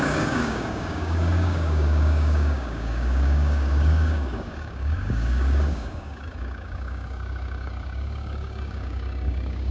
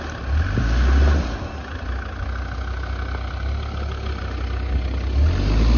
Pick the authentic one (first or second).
second